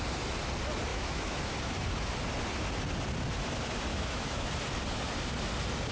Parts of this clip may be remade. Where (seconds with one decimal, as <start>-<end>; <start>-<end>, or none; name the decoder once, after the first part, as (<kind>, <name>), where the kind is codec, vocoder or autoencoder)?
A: 0.9-1.4 (autoencoder, DAC-VAE); 3.9-4.5